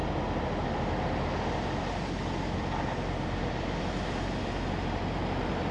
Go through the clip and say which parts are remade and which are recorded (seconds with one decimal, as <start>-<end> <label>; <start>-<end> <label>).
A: 0.0-5.7 recorded